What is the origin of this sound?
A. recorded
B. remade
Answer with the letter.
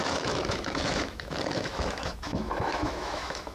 B